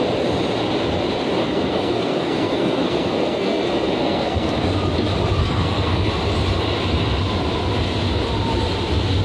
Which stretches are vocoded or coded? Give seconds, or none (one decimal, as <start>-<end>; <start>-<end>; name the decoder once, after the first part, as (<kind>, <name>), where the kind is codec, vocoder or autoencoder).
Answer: 1.4-4.5 (codec, SNAC); 5.4-6.1